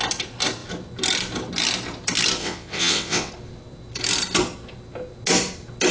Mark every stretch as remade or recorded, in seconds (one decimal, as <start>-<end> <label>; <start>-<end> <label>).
0.0-2.4 recorded; 2.4-3.3 remade; 3.3-5.9 recorded